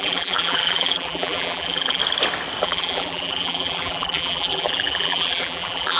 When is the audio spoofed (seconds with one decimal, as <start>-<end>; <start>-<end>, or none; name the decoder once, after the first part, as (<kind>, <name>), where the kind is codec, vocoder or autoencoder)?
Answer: 0.0-2.0 (vocoder, BigVGAN v2); 2.6-6.0